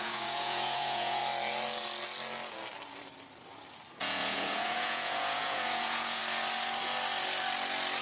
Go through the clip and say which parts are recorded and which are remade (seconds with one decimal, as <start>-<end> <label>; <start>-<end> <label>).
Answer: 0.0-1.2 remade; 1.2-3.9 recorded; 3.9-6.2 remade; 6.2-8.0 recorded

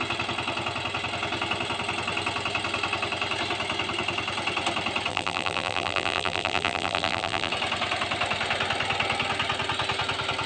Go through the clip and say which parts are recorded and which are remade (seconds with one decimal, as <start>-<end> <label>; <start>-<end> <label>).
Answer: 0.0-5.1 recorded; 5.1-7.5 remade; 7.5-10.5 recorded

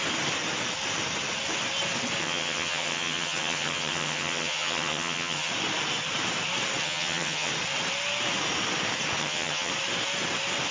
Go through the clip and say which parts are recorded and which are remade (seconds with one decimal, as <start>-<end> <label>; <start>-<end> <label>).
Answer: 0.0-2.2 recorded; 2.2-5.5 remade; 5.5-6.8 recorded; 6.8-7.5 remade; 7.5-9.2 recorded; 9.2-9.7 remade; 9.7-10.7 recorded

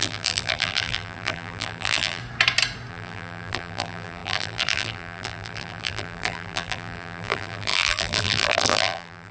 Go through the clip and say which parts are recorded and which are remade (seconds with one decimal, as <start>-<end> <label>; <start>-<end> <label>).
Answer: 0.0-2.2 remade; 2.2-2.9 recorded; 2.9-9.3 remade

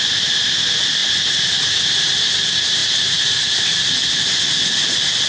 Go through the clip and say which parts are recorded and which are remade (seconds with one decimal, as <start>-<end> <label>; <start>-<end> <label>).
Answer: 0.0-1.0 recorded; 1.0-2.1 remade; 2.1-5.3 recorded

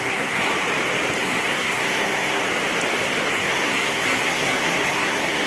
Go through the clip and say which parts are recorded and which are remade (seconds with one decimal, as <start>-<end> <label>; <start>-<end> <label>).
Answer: 0.0-0.5 remade; 0.5-1.2 recorded; 1.2-2.4 remade; 2.4-3.3 recorded; 3.3-5.5 remade

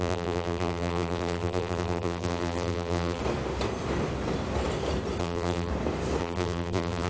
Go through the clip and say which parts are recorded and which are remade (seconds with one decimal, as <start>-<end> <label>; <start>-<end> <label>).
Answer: 0.0-3.2 remade; 3.2-5.2 recorded; 5.2-5.7 remade; 5.7-6.2 recorded; 6.2-7.1 remade